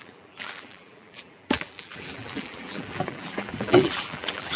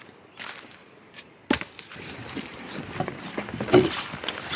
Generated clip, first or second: first